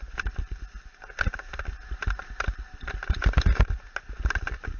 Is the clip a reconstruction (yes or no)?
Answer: no